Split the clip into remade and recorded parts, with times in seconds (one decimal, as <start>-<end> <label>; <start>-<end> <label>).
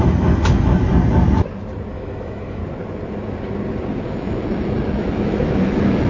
0.0-0.9 remade; 0.9-1.9 recorded; 1.9-2.6 remade; 2.6-4.0 recorded; 4.0-6.1 remade